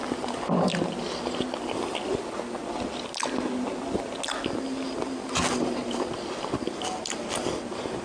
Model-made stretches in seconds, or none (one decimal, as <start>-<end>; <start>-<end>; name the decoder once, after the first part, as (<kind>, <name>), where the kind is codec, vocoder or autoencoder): 4.6-5.8 (vocoder, BigVGAN v2); 7.0-8.0